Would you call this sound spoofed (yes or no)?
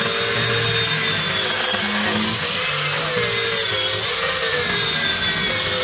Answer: no